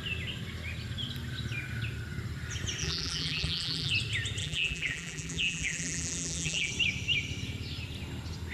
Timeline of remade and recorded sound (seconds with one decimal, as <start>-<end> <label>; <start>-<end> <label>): 0.0-2.8 recorded; 2.8-3.9 remade; 3.9-4.4 recorded; 4.4-6.7 remade; 6.7-8.5 recorded